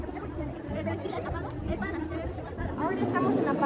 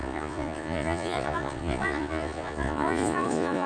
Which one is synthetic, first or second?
second